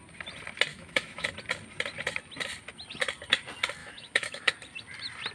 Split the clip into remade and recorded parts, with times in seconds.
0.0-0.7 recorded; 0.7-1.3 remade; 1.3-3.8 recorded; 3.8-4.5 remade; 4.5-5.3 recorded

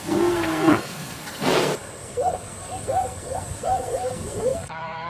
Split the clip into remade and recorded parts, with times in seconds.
0.0-5.1 remade

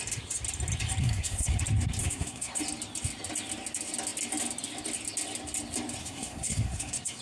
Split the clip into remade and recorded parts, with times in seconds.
0.0-1.0 recorded; 1.0-1.6 remade; 1.6-2.0 recorded; 2.0-2.6 remade; 2.6-6.0 recorded; 6.0-7.2 remade

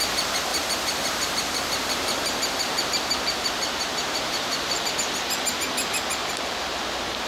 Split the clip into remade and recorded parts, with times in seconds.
0.0-0.5 recorded; 0.5-4.9 remade; 4.9-6.2 recorded; 6.2-7.3 remade

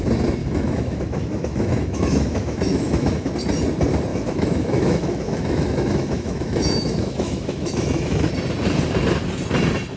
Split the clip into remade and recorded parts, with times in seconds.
0.0-0.4 recorded; 0.4-3.3 remade; 3.3-4.1 recorded; 4.1-8.3 remade; 8.3-10.0 recorded

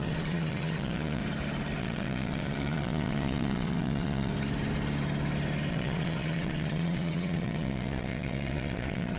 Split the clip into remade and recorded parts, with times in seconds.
0.0-1.2 remade; 1.2-1.8 recorded; 1.8-4.3 remade; 4.3-5.7 recorded; 5.7-9.2 remade

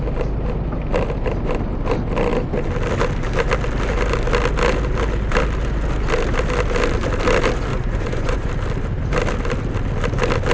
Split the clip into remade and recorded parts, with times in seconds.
0.0-7.7 recorded; 7.7-8.5 remade; 8.5-10.5 recorded